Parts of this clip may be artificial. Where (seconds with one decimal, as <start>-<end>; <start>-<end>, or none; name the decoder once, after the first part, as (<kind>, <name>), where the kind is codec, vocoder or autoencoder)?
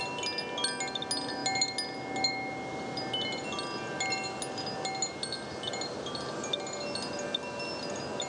none